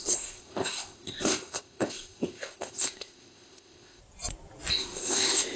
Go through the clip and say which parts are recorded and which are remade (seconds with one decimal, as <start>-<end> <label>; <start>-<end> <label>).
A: 0.0-4.0 remade; 4.0-4.7 recorded; 4.7-5.6 remade